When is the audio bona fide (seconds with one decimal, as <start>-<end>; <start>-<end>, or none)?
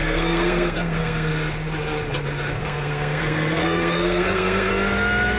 1.3-2.6; 4.7-5.4